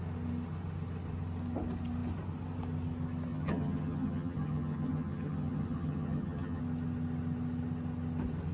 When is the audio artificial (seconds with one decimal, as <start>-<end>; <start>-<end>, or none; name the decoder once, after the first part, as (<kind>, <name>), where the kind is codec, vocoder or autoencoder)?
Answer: 3.3-6.6 (vocoder, HiFi-GAN)